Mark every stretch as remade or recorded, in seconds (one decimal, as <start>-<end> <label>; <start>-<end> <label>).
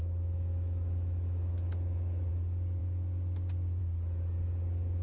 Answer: 0.0-2.3 remade; 2.3-5.0 recorded